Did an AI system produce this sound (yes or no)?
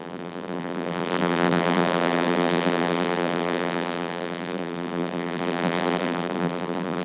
yes